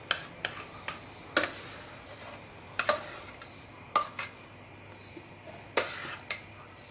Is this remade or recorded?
recorded